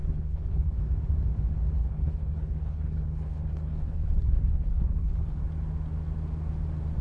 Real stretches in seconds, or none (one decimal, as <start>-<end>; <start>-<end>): 0.8-1.8; 5.4-7.0